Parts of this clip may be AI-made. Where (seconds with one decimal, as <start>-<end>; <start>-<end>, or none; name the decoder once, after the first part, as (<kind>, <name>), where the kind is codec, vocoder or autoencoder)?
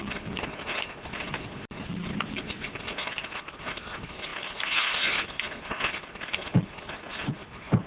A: none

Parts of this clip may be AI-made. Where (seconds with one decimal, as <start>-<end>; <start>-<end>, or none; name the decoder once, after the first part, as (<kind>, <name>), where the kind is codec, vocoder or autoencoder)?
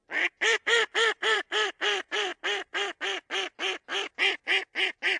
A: 0.0-2.3 (vocoder, BigVGAN v2); 3.0-3.9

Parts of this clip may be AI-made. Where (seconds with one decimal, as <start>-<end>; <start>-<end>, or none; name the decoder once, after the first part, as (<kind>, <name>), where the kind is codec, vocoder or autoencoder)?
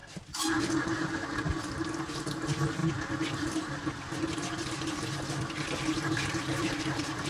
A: none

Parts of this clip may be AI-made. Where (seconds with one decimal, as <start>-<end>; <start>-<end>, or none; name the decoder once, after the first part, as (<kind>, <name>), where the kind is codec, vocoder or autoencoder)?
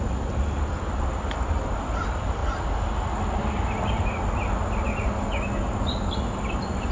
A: 0.0-2.4 (vocoder, BigVGAN v2); 5.8-6.9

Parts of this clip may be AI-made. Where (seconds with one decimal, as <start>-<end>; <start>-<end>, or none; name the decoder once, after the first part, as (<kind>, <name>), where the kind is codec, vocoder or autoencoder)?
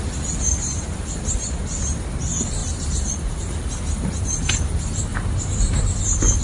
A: 2.6-3.7 (vocoder, BigVGAN v2); 5.1-5.8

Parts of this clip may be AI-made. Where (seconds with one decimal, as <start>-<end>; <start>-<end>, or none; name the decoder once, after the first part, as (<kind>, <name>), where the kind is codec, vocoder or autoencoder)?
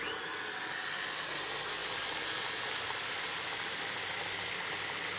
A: none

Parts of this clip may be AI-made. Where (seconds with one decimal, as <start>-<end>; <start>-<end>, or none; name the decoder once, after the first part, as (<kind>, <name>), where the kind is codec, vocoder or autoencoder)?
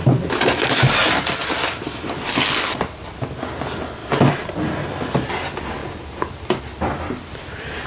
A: 4.0-4.5 (vocoder, BigVGAN v2); 5.8-6.6